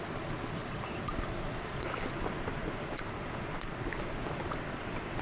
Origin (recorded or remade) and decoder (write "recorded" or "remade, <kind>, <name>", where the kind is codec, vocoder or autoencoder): recorded